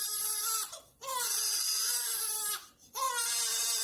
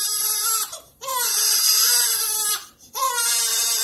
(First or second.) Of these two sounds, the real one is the first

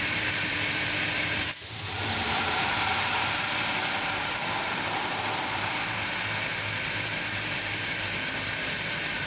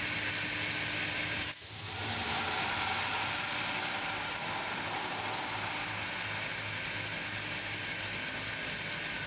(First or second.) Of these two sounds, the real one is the second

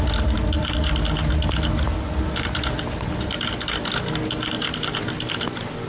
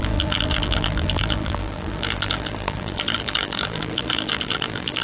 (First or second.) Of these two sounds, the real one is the first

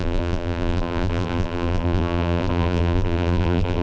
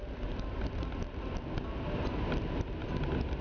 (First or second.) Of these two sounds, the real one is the second